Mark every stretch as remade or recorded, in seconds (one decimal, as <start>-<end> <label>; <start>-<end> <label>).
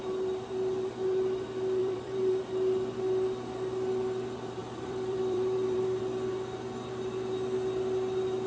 0.0-1.8 recorded; 1.8-2.4 remade; 2.4-4.6 recorded; 4.6-6.0 remade; 6.0-8.5 recorded